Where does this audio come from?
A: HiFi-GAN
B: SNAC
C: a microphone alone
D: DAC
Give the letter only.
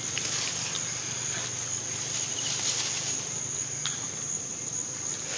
C